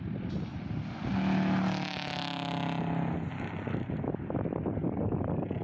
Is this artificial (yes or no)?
no